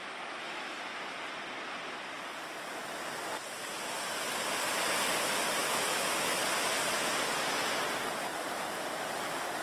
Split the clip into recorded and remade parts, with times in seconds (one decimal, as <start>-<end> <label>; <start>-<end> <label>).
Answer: 0.0-0.8 remade; 0.8-5.6 recorded; 5.6-6.4 remade; 6.4-9.6 recorded